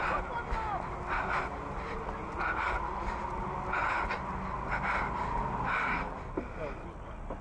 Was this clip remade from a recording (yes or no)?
no